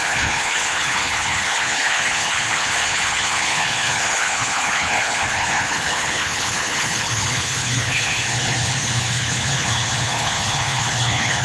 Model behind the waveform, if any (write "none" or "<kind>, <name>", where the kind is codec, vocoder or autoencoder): codec, HILCodec